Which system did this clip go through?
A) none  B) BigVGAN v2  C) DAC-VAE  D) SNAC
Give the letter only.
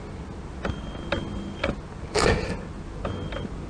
A